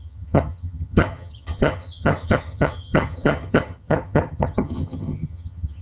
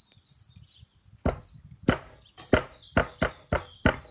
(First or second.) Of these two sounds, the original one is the second